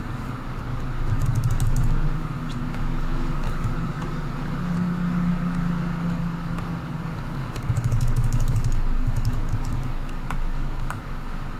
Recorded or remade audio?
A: remade